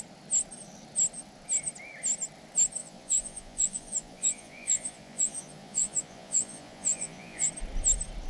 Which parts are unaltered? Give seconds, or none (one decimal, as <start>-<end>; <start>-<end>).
0.0-2.8; 7.5-8.3